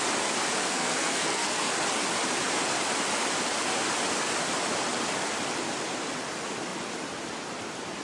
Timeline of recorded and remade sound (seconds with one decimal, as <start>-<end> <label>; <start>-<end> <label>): 0.0-0.6 recorded; 0.6-1.7 remade; 1.7-8.0 recorded